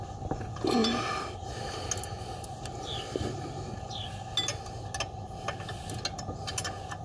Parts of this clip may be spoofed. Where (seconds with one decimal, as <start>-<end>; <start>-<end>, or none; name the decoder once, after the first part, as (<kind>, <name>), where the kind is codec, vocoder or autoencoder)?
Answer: none